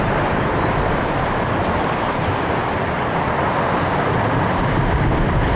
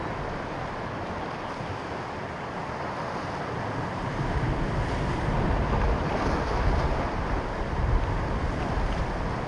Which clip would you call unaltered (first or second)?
second